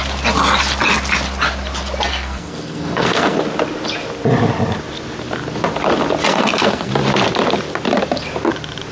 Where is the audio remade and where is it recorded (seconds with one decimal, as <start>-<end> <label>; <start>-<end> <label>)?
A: 0.0-2.1 recorded; 2.1-3.4 remade; 3.4-6.3 recorded; 6.3-6.9 remade; 6.9-8.9 recorded